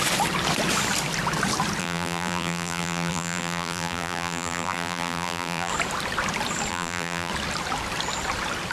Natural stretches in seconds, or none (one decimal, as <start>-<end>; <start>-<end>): 0.0-1.8; 5.7-6.7; 7.3-8.7